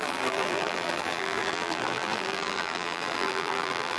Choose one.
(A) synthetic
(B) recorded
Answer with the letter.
A